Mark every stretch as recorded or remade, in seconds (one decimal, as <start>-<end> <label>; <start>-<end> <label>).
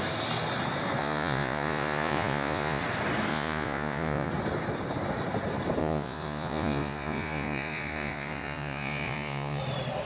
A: 0.0-1.0 recorded; 1.0-2.8 remade; 2.8-3.3 recorded; 3.3-4.3 remade; 4.3-5.8 recorded; 5.8-9.6 remade; 9.6-10.1 recorded